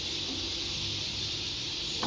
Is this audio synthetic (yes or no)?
yes